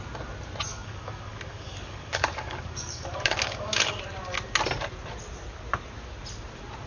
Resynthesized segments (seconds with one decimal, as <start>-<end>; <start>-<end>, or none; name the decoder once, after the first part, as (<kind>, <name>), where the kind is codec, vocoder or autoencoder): 0.7-4.0 (codec, DAC)